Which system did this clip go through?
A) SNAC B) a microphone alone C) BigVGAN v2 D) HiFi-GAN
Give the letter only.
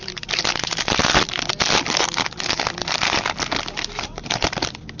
B